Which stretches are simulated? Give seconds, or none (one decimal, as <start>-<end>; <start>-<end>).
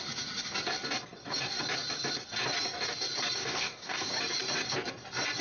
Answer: 3.4-4.1